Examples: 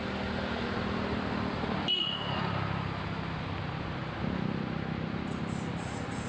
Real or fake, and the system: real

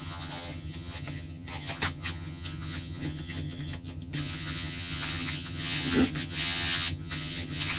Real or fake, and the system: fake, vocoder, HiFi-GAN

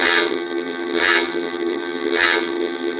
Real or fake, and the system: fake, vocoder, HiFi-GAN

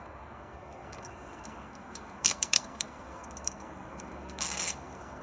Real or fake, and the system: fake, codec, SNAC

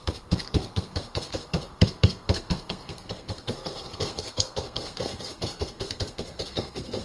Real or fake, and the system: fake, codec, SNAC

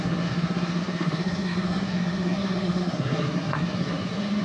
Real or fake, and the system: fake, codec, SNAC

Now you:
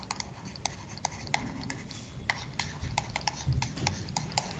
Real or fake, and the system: real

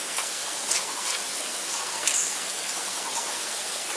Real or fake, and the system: fake, codec, SNAC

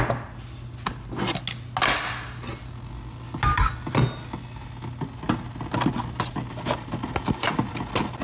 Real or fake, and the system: real